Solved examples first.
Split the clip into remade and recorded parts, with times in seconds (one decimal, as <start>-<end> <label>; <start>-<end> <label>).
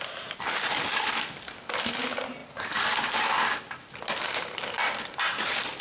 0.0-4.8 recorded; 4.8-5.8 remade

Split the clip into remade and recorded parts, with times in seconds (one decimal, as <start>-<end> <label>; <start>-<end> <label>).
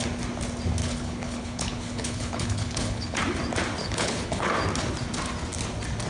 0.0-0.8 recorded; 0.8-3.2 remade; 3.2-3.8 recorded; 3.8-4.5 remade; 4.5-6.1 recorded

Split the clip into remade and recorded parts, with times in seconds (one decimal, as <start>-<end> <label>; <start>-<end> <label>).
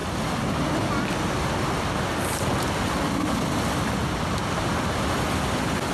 0.0-5.9 recorded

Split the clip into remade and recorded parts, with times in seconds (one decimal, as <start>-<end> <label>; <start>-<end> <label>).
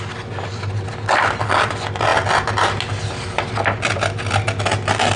0.0-5.2 recorded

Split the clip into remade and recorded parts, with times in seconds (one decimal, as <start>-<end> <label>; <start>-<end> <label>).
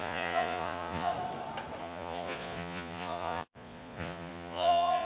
0.0-1.1 remade; 1.1-1.8 recorded; 1.8-5.0 remade